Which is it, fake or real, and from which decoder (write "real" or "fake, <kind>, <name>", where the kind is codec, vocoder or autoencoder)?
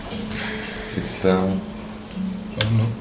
real